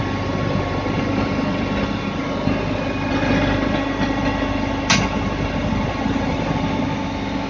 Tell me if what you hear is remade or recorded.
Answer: recorded